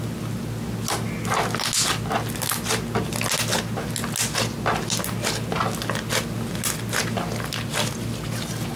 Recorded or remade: recorded